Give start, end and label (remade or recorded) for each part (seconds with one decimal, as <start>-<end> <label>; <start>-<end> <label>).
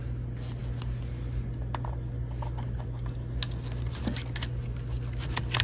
0.0-5.6 recorded